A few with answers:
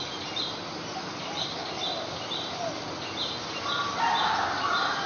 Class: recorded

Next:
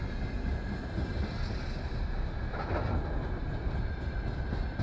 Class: recorded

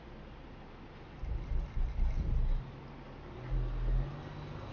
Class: recorded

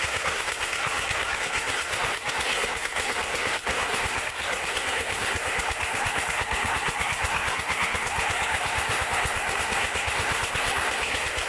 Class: remade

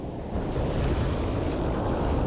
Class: recorded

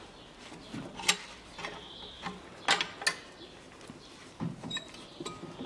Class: recorded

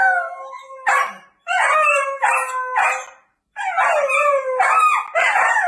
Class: recorded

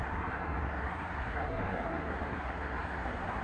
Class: remade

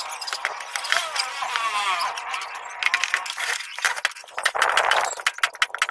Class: recorded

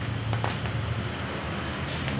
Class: recorded